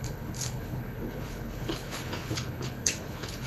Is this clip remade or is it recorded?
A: remade